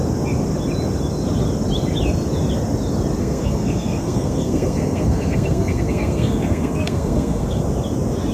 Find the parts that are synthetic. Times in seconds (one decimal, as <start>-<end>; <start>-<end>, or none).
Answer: 3.2-7.6